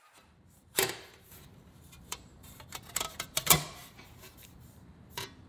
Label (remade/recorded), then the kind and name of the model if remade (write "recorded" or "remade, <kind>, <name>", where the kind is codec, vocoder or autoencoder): remade, vocoder, BigVGAN v2